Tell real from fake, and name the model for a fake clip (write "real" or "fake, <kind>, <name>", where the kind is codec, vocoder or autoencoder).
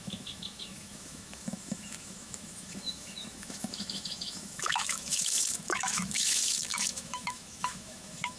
fake, autoencoder, DAC-VAE